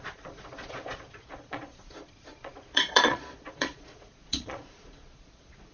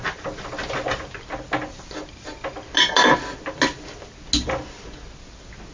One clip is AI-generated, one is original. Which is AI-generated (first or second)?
first